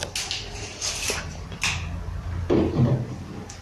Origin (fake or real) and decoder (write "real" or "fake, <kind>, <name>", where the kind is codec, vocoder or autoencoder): real